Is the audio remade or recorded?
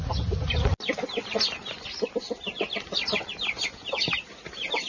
recorded